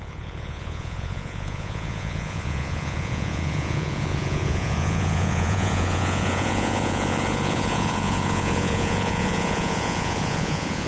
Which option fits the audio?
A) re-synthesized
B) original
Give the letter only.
A